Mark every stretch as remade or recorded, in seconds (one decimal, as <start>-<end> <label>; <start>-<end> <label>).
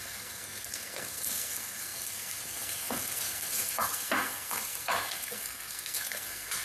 0.0-6.6 remade